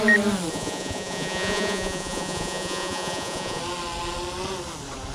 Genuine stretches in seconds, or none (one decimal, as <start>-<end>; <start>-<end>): 0.0-0.5; 3.6-5.1